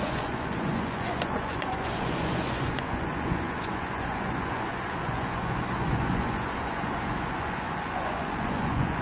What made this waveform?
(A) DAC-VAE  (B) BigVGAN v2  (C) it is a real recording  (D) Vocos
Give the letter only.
D